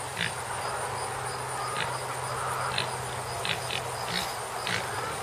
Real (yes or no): yes